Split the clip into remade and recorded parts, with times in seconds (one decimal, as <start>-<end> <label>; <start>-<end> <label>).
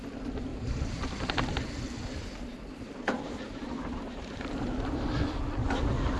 0.0-0.5 recorded; 0.5-1.0 remade; 1.0-2.5 recorded; 2.5-4.7 remade; 4.7-6.2 recorded